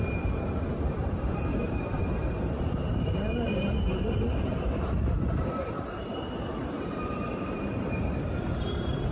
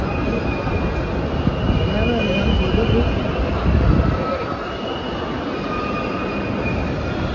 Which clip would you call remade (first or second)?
first